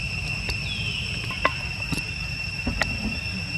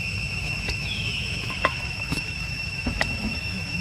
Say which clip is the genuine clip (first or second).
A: first